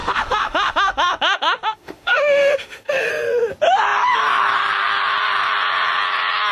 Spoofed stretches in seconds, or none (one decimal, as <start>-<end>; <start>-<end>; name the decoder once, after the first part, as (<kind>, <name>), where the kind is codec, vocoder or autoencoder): 0.0-3.1 (autoencoder, DAC-VAE)